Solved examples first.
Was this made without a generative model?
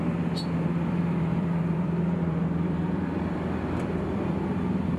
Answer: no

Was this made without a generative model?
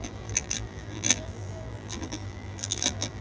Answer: no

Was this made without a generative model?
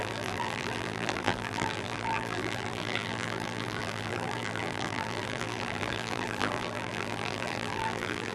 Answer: no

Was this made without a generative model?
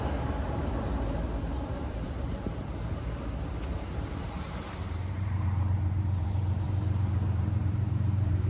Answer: no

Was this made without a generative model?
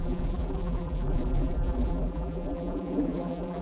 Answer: no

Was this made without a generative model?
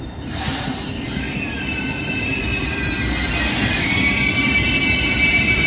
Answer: no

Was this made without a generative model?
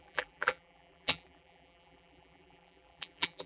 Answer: no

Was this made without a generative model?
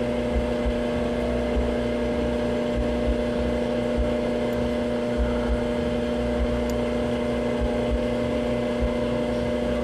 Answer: yes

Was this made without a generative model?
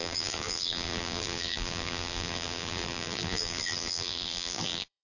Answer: no